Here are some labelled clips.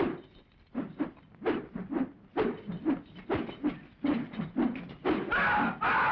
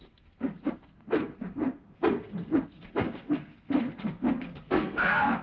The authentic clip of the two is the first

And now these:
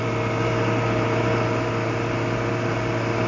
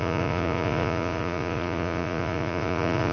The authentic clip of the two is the first